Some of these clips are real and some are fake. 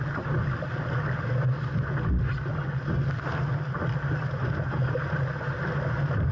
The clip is real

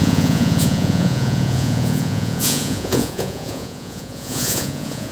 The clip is fake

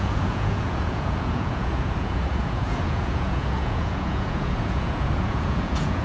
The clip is fake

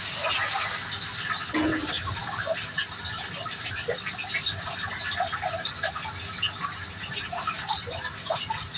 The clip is real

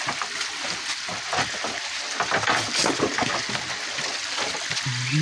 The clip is real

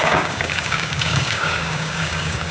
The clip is fake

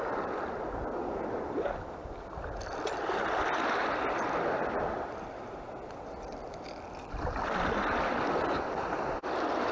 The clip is real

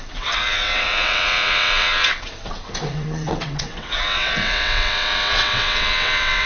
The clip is fake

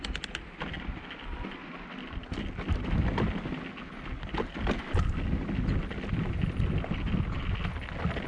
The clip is real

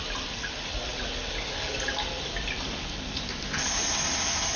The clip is real